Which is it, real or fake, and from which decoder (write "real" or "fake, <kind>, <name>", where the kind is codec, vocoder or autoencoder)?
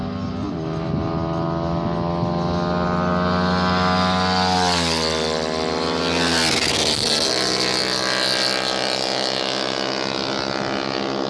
real